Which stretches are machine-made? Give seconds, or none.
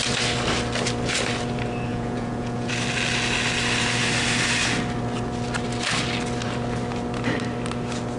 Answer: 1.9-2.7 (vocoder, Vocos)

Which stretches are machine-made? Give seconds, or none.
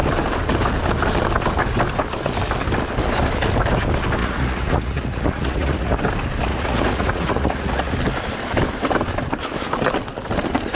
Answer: 4.2-6.0 (vocoder, Vocos); 6.5-7.9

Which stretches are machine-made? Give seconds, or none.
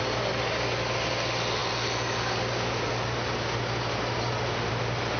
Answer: none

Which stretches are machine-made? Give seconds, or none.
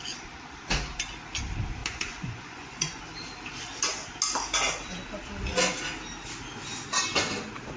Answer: 1.8-3.0 (vocoder, Vocos)